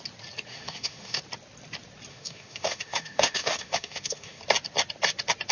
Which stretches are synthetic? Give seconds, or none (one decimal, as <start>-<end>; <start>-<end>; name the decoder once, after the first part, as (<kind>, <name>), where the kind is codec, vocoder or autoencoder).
0.5-1.2 (autoencoder, DAC-VAE); 2.1-4.4